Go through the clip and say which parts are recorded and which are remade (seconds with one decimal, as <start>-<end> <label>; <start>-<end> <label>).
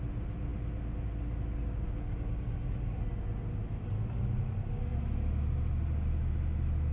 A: 0.0-6.9 recorded